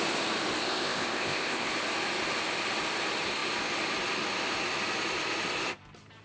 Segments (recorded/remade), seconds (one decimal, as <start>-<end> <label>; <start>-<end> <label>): 0.0-0.6 recorded; 0.6-1.7 remade; 1.7-6.2 recorded